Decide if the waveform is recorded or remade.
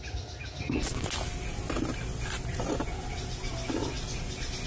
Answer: recorded